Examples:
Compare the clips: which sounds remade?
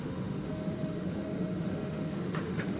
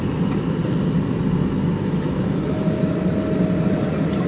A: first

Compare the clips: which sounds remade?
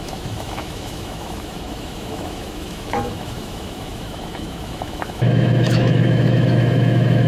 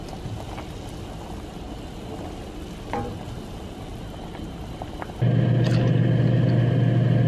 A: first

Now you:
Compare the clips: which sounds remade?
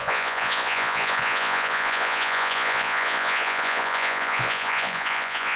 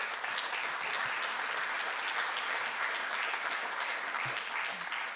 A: first